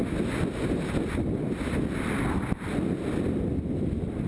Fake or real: real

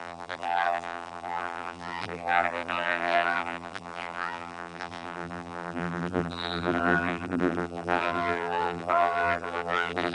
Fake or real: fake